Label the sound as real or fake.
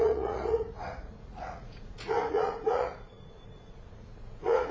fake